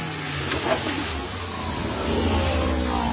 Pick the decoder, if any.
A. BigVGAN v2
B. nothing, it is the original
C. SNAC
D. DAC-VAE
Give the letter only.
B